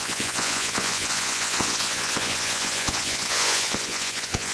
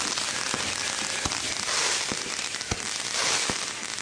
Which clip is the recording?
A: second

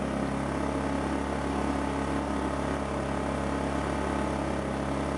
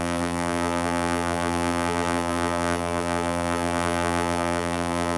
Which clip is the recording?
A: first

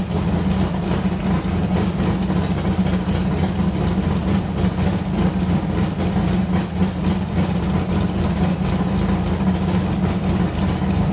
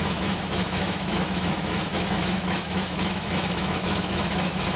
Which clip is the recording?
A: first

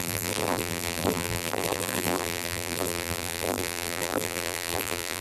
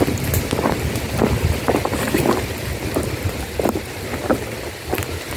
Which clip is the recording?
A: second